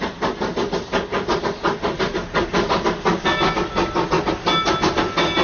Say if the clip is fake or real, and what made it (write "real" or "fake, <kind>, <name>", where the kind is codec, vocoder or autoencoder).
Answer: real